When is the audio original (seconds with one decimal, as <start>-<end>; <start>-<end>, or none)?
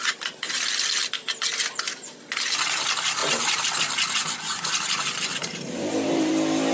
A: 0.0-1.5; 2.2-3.2; 3.8-4.2; 4.7-5.4; 6.3-6.7